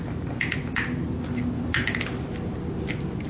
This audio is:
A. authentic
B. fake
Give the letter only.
A